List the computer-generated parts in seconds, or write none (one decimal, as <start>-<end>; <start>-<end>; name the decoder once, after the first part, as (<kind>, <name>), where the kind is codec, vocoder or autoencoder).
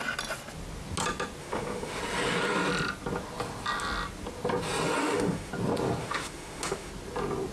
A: 1.4-2.0 (autoencoder, DAC-VAE); 5.0-5.5; 6.0-6.9